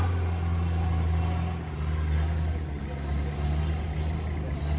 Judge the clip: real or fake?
real